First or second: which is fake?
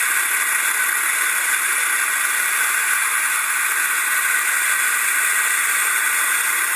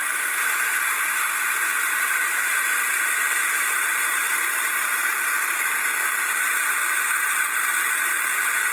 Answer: second